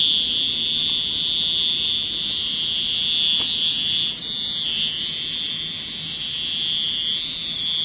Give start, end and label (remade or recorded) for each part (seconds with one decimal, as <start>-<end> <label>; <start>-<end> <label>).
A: 0.0-7.8 recorded